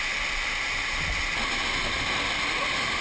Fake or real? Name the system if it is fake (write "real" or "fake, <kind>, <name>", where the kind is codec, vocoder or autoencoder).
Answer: real